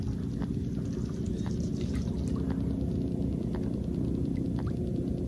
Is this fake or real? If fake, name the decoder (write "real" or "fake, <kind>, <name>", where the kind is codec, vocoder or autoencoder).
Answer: real